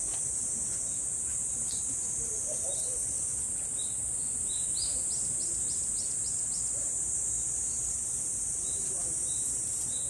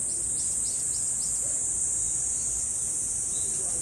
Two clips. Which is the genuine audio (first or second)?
second